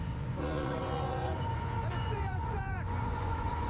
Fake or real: fake